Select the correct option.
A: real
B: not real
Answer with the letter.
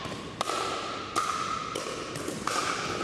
A